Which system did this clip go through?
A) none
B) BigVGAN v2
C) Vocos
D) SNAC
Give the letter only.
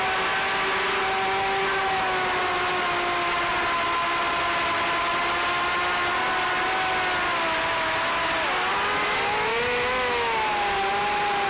A